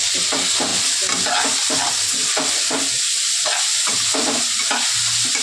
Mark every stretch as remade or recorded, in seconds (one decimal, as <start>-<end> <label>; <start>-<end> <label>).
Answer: 0.0-5.4 recorded